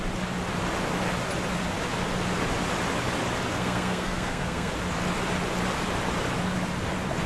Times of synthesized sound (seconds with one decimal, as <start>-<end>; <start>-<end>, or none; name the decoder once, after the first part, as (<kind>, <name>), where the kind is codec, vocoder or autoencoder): 3.5-4.7 (codec, SNAC)